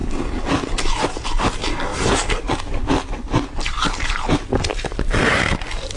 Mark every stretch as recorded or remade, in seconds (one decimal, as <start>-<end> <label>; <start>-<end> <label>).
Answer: 0.0-1.9 recorded; 1.9-5.0 remade; 5.0-6.0 recorded